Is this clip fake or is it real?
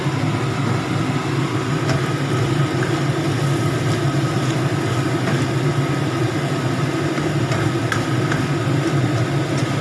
real